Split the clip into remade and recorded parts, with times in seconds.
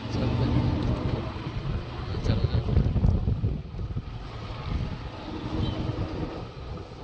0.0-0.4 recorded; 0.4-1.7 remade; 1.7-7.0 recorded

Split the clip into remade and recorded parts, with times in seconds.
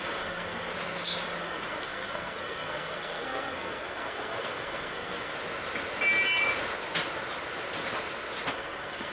0.0-0.7 remade; 0.7-1.4 recorded; 1.4-5.3 remade; 5.3-8.5 recorded; 8.5-9.1 remade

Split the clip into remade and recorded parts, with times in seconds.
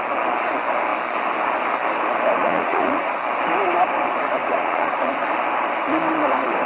0.0-2.4 recorded; 2.4-3.2 remade; 3.2-4.4 recorded; 4.4-5.1 remade; 5.1-6.7 recorded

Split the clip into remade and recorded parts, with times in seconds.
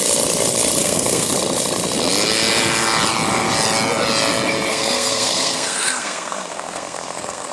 0.0-0.8 recorded; 0.8-1.3 remade; 1.3-4.7 recorded; 4.7-7.5 remade